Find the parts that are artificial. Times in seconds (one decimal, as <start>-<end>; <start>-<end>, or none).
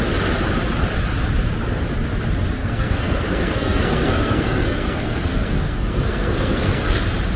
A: 2.6-7.0